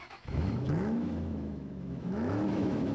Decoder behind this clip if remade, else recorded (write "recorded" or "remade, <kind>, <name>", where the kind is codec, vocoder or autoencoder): remade, autoencoder, DAC-VAE